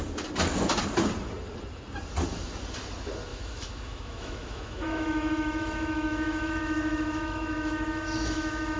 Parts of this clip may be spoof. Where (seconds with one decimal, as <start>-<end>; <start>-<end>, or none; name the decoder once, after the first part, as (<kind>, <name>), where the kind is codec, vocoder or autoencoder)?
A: 3.3-8.8 (autoencoder, DAC-VAE)